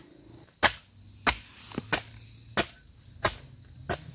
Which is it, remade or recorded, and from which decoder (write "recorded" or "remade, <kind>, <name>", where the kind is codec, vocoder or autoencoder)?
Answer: recorded